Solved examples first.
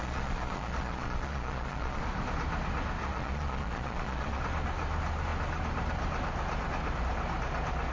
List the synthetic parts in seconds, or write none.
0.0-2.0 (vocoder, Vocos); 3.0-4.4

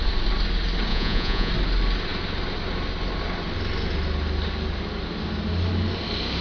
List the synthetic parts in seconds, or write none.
0.9-1.5 (vocoder, Vocos)

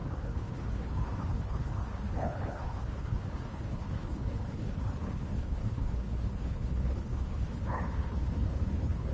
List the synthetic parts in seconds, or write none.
0.0-9.1 (codec, HILCodec)

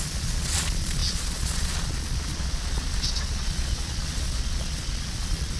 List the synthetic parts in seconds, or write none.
0.0-5.6 (vocoder, Vocos)

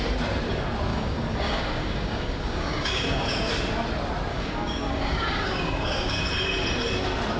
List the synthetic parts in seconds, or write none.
0.9-3.5 (codec, DAC); 4.3-6.2

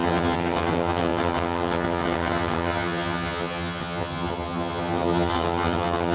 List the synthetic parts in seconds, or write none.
0.0-6.1 (vocoder, HiFi-GAN)